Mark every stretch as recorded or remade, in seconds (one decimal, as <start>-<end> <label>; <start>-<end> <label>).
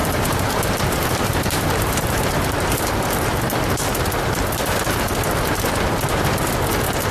0.0-3.5 remade; 3.5-7.1 recorded